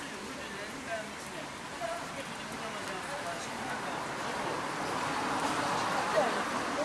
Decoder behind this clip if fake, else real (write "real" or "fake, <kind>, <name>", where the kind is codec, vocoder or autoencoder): real